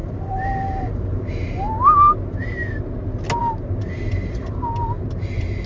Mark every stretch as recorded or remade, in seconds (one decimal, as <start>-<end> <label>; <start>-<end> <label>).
0.0-1.3 remade; 1.3-3.4 recorded; 3.4-4.5 remade; 4.5-5.7 recorded